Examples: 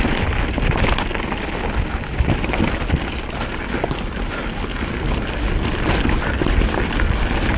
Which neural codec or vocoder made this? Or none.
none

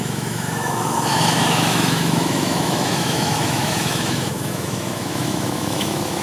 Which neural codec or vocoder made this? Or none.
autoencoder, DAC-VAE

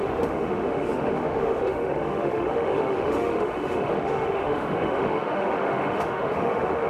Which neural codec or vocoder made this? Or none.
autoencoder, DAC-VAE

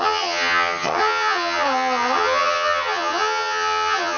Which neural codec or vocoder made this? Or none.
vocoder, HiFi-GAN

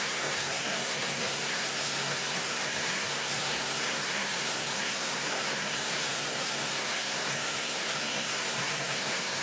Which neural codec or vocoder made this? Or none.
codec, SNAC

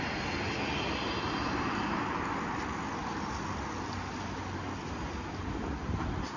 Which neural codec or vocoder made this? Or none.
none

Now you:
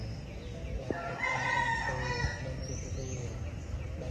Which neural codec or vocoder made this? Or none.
none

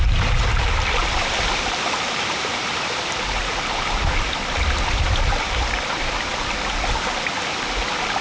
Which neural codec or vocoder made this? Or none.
none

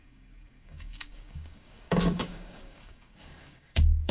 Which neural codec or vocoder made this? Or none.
codec, DAC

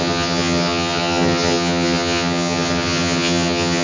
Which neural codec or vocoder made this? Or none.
vocoder, HiFi-GAN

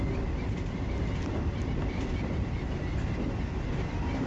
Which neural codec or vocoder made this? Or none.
none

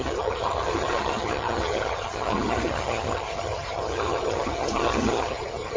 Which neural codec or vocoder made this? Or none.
vocoder, HiFi-GAN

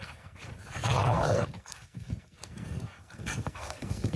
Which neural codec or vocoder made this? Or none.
codec, SNAC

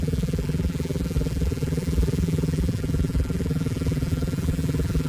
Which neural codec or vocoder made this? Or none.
vocoder, BigVGAN v2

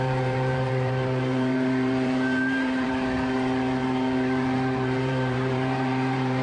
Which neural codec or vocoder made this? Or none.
vocoder, BigVGAN v2